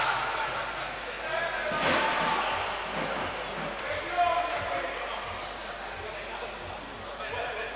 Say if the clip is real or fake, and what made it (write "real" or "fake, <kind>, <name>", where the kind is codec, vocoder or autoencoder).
real